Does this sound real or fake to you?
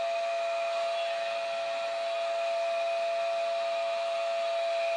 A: real